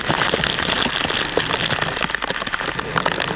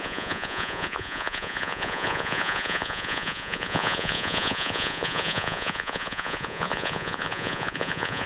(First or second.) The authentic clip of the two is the first